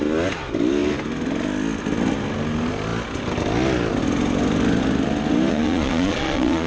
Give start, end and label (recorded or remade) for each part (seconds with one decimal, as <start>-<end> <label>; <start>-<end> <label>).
0.0-5.5 recorded; 5.5-6.7 remade